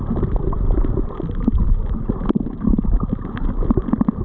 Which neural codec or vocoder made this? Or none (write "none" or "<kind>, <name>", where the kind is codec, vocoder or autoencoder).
none